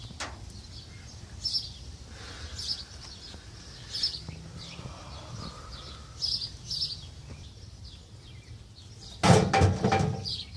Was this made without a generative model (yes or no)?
yes